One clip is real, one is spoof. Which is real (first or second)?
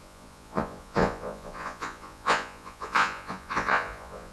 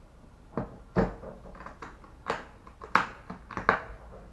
second